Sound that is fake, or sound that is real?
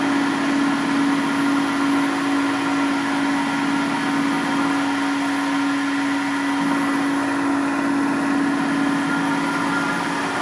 real